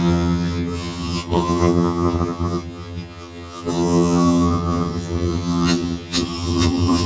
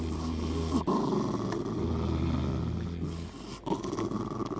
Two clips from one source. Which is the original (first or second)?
second